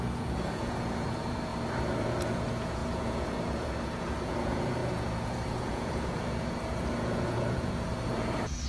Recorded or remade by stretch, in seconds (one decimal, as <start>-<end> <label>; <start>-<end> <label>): 0.0-1.5 remade; 1.5-2.0 recorded; 2.0-8.7 remade